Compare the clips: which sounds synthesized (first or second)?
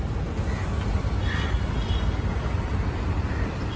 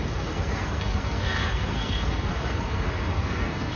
second